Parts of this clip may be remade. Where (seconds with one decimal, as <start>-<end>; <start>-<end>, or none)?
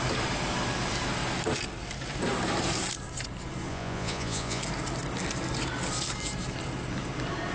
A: 3.7-4.6